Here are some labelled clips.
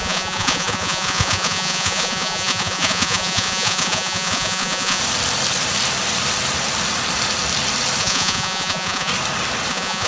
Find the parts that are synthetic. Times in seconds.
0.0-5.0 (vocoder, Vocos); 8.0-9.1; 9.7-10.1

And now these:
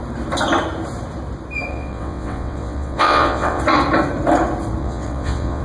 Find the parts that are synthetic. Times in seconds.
1.7-3.6 (vocoder, WaveNeXt); 4.8-5.6

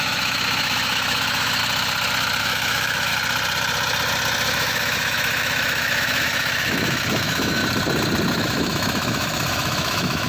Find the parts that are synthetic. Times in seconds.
0.0-1.6 (autoencoder, DAC-VAE); 2.4-3.1; 4.5-7.6; 8.3-10.3

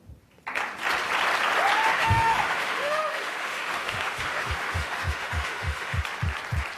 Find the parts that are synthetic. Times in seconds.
1.9-6.0 (autoencoder, DAC-VAE)

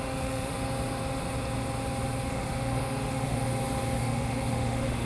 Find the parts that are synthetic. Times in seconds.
0.0-0.5 (autoencoder, DAC-VAE); 2.3-3.5; 4.0-5.1

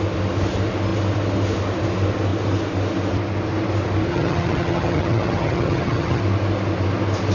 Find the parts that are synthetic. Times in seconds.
4.1-6.2 (vocoder, HiFi-GAN)

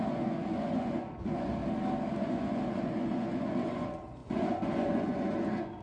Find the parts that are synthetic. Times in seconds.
0.0-1.6 (vocoder, Vocos); 2.2-5.8

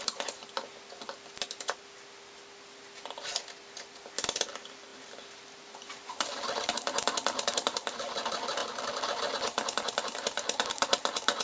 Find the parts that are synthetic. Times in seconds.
none